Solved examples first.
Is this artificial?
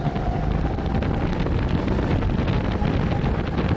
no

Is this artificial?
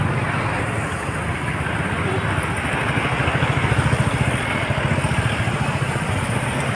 no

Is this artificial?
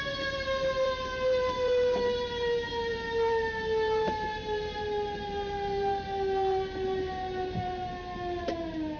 yes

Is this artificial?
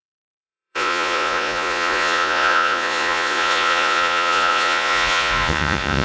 yes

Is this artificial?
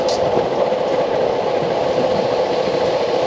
no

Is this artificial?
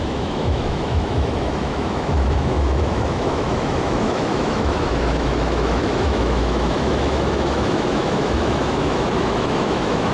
yes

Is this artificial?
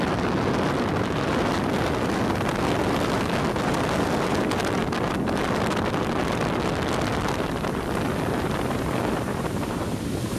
no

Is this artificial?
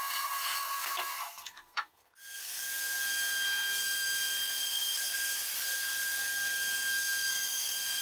yes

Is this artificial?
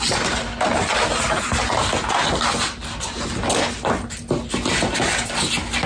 no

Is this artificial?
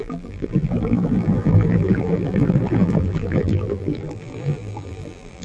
yes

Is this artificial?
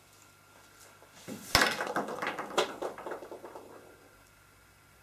no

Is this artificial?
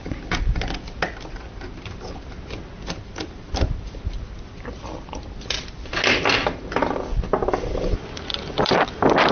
no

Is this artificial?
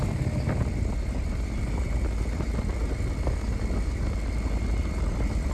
no